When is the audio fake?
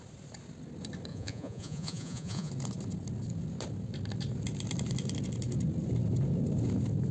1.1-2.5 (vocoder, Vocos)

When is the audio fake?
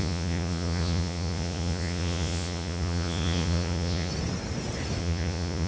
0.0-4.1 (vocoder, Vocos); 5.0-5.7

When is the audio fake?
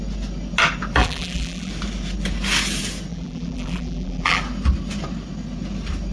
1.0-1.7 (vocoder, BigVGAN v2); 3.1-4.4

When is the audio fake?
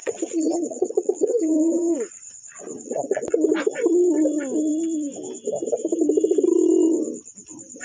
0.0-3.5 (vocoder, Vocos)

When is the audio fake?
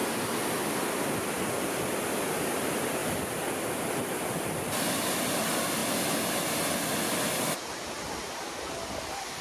none